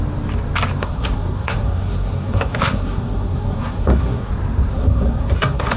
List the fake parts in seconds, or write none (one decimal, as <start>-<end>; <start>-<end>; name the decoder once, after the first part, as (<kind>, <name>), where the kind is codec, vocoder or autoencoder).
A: 0.8-4.3 (codec, SNAC); 4.7-5.8